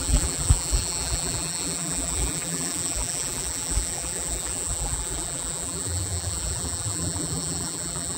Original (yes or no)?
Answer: no